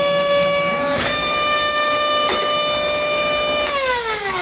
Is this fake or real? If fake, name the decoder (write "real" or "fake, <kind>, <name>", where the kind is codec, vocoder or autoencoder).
fake, autoencoder, DAC-VAE